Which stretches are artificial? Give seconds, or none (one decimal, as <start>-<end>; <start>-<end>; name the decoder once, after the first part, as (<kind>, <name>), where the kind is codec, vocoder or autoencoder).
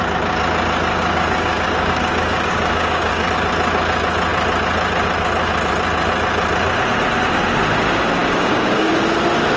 0.9-3.3 (codec, DAC); 8.2-8.9